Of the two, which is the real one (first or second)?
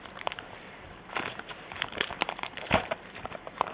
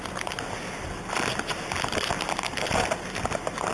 second